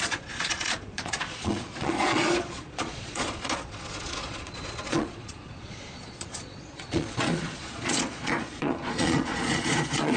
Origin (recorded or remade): remade